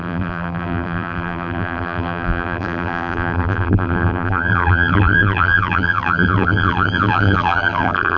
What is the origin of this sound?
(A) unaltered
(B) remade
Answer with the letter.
B